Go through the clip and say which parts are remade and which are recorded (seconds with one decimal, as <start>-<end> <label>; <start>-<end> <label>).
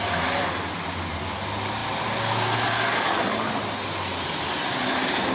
0.0-5.3 recorded